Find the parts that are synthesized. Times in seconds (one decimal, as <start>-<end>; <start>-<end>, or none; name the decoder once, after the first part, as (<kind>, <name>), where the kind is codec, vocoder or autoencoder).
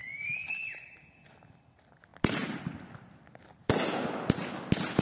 0.0-1.1 (vocoder, BigVGAN v2); 2.1-3.8